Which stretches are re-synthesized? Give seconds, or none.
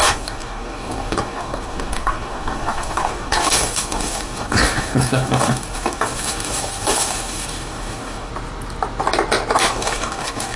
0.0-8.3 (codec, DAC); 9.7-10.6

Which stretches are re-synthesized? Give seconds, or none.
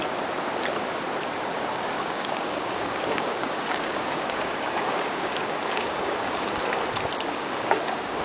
1.7-6.6 (codec, DAC); 7.3-8.2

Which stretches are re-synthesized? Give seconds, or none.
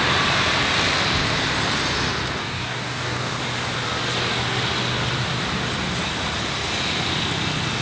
2.4-3.4 (codec, DAC)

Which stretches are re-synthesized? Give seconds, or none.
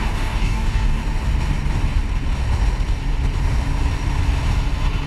0.0-1.0 (codec, DAC)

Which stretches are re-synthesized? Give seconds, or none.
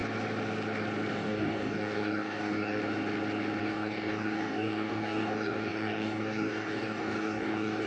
1.1-2.8 (codec, DAC); 3.6-7.9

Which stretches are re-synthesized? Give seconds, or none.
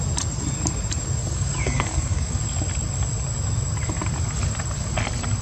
1.2-2.4 (codec, DAC)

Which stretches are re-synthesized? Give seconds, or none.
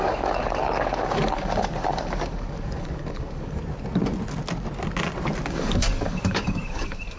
0.0-3.6 (codec, DAC); 5.5-7.2